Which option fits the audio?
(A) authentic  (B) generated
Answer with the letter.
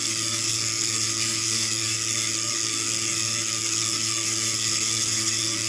B